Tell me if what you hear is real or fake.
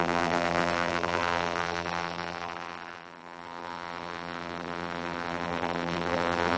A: fake